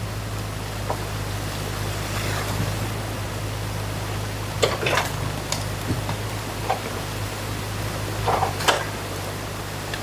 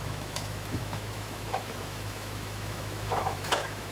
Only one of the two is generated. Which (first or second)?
second